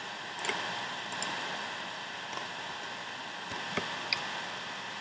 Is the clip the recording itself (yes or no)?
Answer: yes